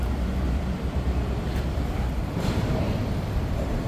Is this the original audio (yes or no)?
no